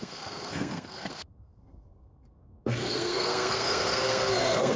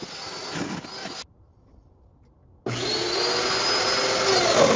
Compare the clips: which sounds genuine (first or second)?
second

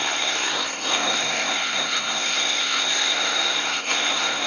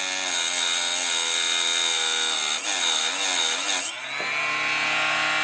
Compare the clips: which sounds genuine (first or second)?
second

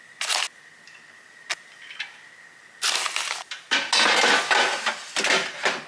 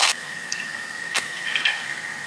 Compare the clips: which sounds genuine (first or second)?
first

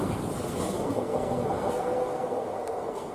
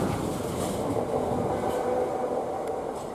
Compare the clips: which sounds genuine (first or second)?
second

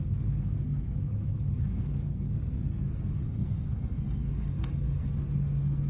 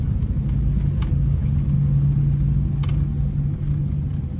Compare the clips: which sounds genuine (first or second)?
second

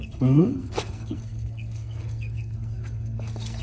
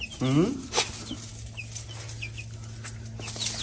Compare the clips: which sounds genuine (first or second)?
second